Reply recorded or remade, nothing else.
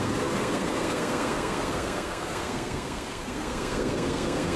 remade